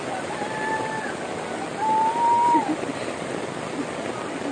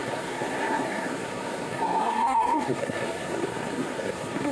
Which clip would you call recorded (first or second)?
first